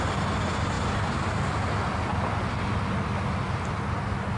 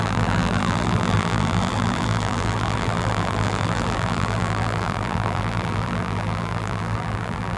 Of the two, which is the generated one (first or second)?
second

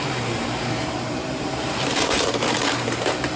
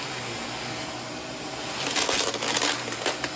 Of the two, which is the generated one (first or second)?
first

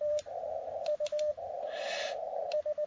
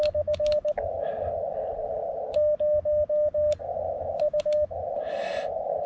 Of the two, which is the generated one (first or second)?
first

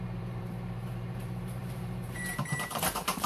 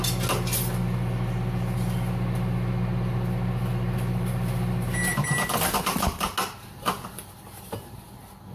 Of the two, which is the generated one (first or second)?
first